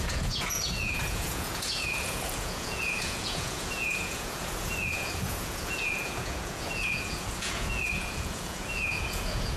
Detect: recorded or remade remade